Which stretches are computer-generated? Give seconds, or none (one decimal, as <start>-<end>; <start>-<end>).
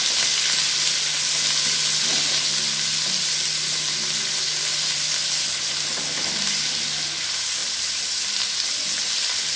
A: none